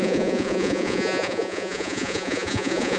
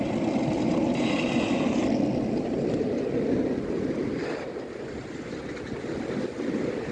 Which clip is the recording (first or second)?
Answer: second